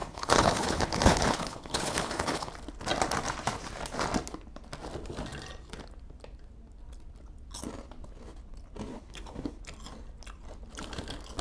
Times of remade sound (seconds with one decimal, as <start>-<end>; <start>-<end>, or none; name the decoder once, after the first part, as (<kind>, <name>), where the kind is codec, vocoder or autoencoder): 0.0-2.5 (codec, HILCodec); 8.9-9.6

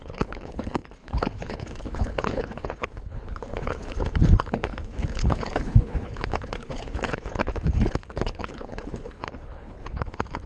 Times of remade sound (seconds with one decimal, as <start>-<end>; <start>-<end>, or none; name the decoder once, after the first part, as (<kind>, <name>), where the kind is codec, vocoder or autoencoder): 0.0-10.5 (codec, HILCodec)

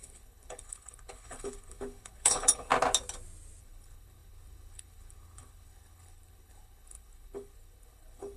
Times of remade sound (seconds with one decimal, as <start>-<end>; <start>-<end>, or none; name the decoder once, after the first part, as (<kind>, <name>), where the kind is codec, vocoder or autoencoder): 0.0-2.7 (codec, HILCodec); 3.6-8.4

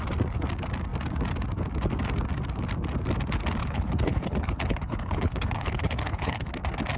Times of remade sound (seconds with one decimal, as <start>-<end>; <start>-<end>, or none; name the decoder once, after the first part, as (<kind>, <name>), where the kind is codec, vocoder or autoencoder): 3.6-6.5 (codec, HILCodec)

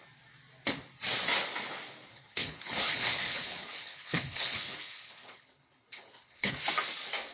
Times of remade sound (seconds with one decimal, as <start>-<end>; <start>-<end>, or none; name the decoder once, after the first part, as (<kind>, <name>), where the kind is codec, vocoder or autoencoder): 2.1-6.5 (codec, HILCodec)